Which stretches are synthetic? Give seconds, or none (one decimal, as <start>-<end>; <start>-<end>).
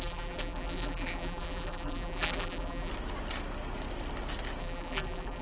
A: 0.0-2.9; 4.6-5.4